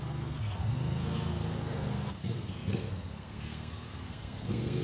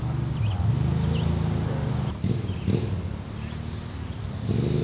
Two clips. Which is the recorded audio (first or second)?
second